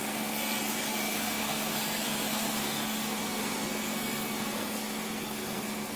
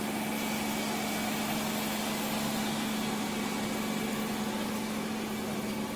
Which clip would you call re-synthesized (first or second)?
first